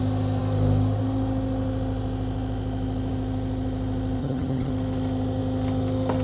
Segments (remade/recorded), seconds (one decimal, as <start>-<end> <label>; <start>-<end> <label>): 0.0-4.2 recorded; 4.2-4.7 remade; 4.7-6.2 recorded